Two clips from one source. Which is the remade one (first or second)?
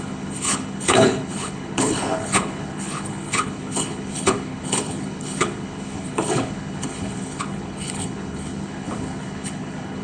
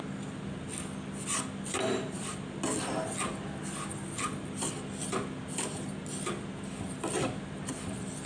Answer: first